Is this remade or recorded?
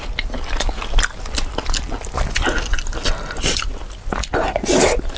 recorded